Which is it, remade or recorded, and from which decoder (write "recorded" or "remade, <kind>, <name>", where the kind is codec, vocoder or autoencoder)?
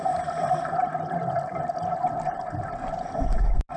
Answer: recorded